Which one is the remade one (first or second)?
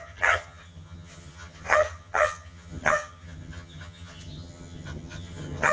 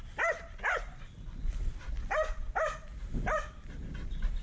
first